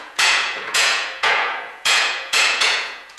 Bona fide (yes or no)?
no